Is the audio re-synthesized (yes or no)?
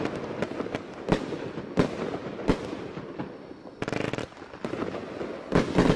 no